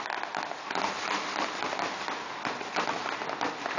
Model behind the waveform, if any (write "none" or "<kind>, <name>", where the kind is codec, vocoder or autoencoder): none